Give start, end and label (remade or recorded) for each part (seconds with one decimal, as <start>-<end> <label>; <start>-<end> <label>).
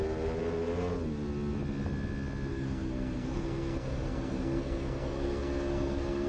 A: 0.0-2.5 recorded; 2.5-6.3 remade